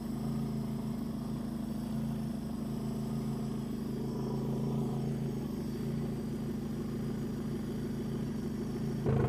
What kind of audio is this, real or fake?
real